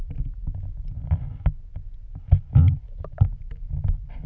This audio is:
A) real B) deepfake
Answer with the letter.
A